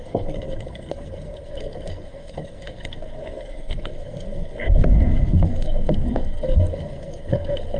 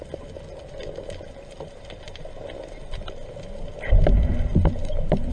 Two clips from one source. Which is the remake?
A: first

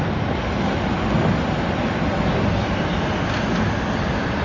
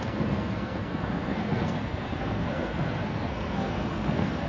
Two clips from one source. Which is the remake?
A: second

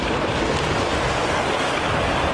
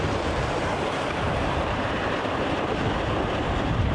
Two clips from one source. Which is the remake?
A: second